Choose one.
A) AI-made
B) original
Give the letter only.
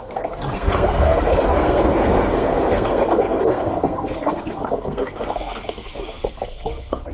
A